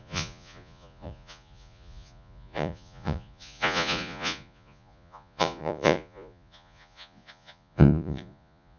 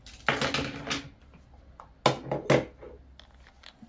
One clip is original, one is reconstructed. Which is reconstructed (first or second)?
first